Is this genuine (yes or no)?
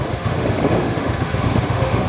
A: no